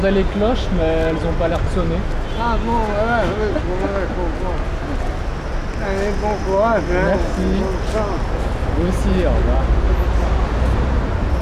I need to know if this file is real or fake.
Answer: real